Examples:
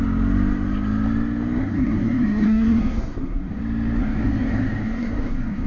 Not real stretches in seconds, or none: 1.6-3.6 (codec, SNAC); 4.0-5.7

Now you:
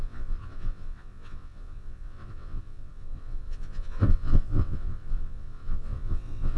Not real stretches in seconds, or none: 0.0-6.6 (vocoder, WaveNeXt)

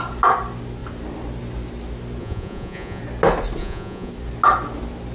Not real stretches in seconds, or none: 2.2-3.0 (vocoder, Vocos); 3.6-4.1

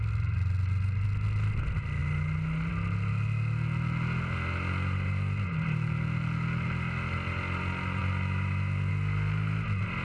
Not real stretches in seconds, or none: none

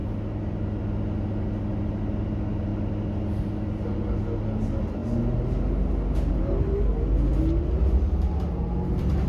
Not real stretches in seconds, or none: none